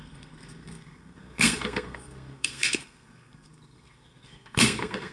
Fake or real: fake